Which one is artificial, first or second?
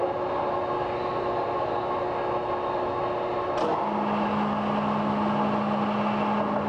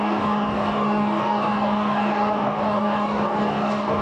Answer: second